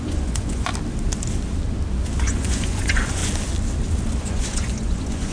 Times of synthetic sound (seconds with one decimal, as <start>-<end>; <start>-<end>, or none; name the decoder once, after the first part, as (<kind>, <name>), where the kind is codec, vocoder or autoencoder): 0.0-0.7 (vocoder, Vocos); 2.2-3.2; 4.2-5.3